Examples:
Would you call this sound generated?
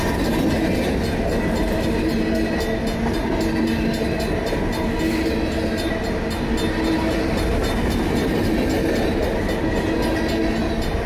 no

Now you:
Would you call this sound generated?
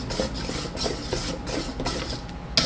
no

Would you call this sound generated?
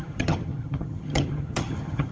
yes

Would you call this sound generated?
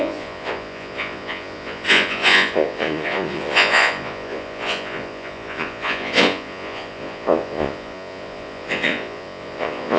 yes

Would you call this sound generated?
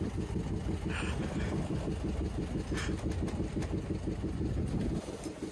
no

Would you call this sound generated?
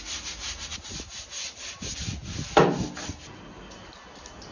no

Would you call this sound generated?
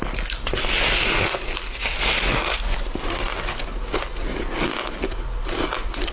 no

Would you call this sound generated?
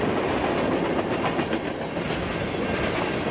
no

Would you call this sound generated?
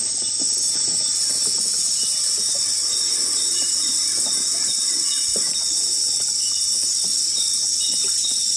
no